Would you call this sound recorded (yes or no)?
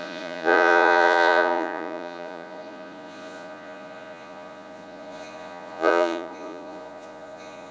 no